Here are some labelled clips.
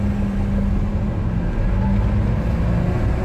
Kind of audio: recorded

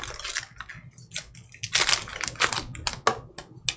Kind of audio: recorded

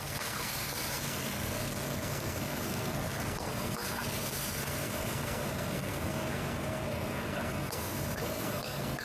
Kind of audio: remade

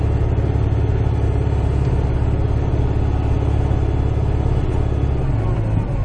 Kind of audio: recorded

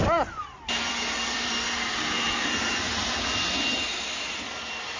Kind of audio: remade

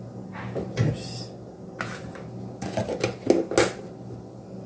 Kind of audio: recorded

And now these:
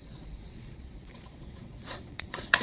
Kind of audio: remade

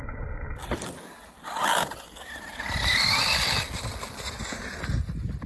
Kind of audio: recorded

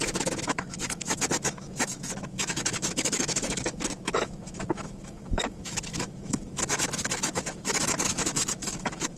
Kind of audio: remade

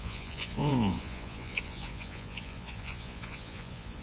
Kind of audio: remade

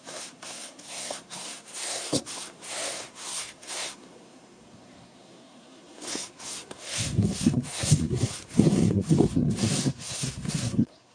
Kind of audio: remade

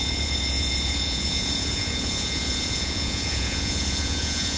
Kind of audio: remade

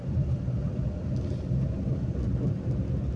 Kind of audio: recorded